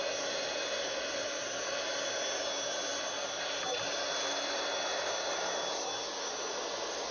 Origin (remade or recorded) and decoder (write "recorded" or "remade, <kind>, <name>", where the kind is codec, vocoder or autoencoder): recorded